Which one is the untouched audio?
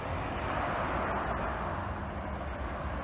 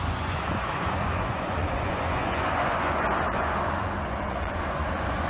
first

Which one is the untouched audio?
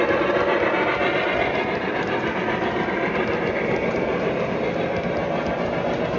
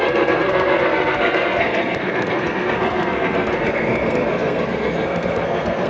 first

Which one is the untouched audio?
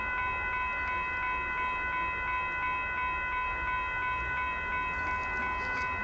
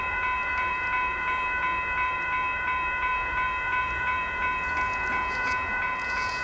first